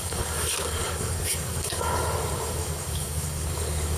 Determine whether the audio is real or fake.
fake